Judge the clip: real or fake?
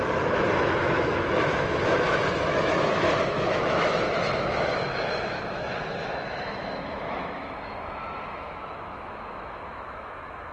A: fake